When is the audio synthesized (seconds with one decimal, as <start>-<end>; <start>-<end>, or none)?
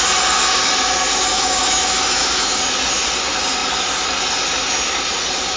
1.3-2.6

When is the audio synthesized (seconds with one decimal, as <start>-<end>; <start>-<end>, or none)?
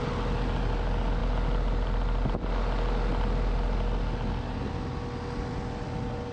none